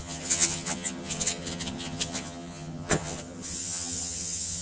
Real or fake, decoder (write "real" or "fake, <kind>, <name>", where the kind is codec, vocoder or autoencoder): fake, vocoder, HiFi-GAN